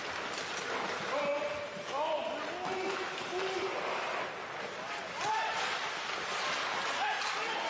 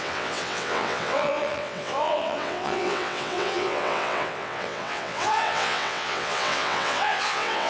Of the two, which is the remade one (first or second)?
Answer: second